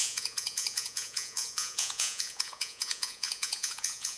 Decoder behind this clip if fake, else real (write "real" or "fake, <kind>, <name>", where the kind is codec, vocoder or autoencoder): fake, vocoder, Vocos